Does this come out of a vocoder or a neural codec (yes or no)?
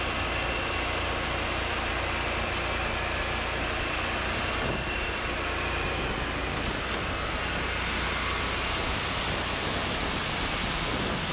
no